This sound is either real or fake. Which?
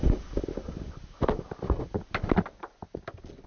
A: real